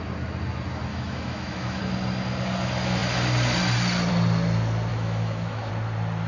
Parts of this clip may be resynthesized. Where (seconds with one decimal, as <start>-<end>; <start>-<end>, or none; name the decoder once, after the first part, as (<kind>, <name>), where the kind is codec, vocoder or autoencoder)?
0.9-1.8 (autoencoder, DAC-VAE); 4.9-5.7